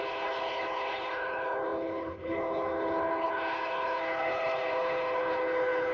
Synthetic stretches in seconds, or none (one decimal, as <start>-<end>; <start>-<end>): 0.0-5.9